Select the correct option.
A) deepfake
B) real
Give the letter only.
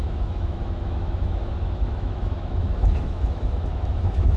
A